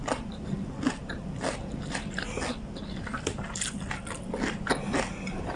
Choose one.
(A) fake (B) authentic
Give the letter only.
B